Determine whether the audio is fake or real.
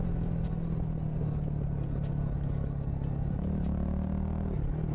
real